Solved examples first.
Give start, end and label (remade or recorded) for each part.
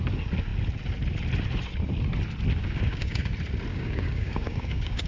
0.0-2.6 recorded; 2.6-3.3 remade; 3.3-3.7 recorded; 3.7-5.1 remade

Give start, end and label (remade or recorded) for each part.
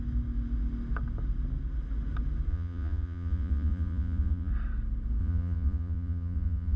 0.0-2.5 recorded; 2.5-4.5 remade; 4.5-5.2 recorded; 5.2-6.8 remade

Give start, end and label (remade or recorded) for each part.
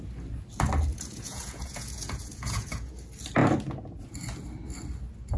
0.0-0.9 recorded; 0.9-2.9 remade; 2.9-5.4 recorded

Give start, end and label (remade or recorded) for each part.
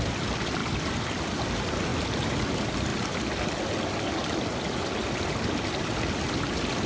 0.0-0.6 recorded; 0.6-1.4 remade; 1.4-1.9 recorded; 1.9-2.5 remade; 2.5-4.2 recorded; 4.2-5.1 remade; 5.1-6.9 recorded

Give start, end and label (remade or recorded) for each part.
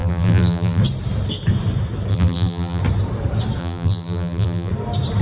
0.0-0.8 remade; 0.8-2.1 recorded; 2.1-2.8 remade; 2.8-3.6 recorded; 3.6-4.7 remade; 4.7-5.2 recorded